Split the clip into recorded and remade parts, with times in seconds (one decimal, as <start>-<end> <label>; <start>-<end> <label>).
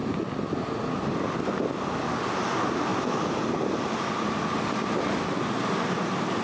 0.0-6.4 recorded